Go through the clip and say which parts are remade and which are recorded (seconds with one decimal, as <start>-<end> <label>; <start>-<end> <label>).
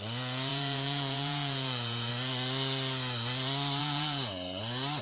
0.0-0.5 recorded; 0.5-2.1 remade; 2.1-3.8 recorded; 3.8-4.6 remade; 4.6-5.0 recorded